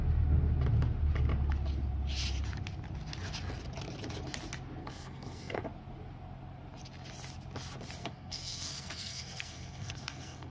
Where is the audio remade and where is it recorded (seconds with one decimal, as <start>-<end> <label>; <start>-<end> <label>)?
0.0-4.8 recorded; 4.8-5.6 remade; 5.6-8.0 recorded; 8.0-10.5 remade